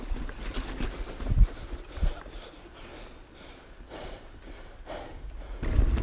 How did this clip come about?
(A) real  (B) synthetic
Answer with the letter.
A